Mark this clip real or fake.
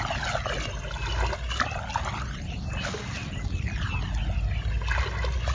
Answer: real